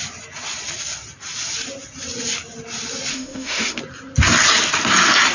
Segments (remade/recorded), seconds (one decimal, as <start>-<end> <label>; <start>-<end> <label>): 0.0-3.1 recorded; 3.1-3.8 remade; 3.8-5.3 recorded